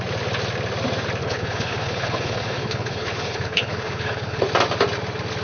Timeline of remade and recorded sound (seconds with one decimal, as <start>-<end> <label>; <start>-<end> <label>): 0.0-1.2 recorded; 1.2-4.4 remade; 4.4-5.4 recorded

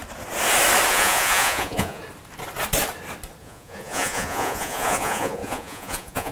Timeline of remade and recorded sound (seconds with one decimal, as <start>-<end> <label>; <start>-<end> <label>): 0.0-0.9 recorded; 0.9-2.0 remade; 2.0-3.4 recorded; 3.4-6.3 remade